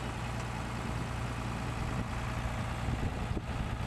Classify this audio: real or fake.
real